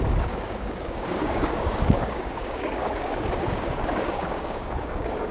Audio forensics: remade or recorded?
remade